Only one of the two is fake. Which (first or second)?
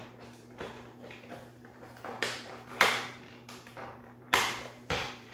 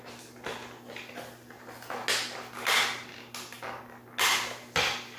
first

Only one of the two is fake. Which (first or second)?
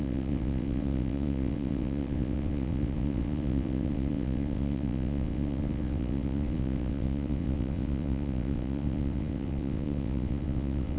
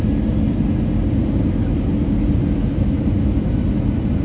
first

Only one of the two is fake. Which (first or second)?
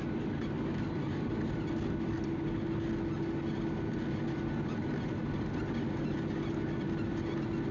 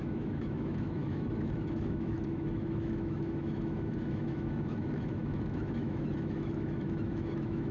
second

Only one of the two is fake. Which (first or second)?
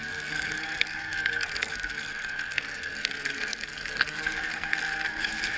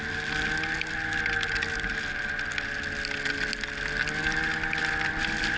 first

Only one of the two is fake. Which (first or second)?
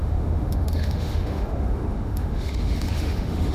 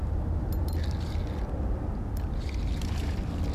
first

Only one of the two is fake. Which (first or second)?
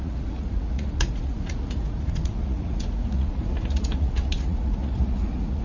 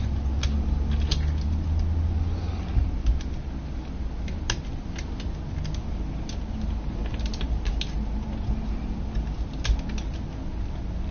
first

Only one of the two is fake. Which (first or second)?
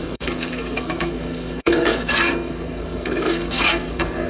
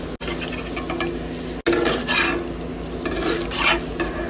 first